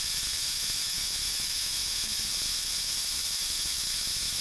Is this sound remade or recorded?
remade